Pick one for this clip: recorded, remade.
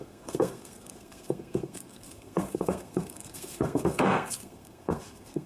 remade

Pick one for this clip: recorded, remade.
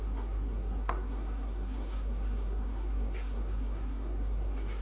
remade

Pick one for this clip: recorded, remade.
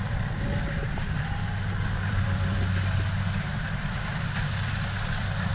remade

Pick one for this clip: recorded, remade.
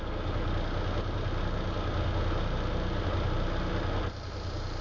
recorded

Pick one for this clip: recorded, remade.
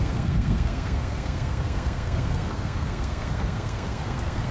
remade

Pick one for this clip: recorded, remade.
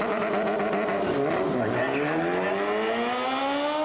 recorded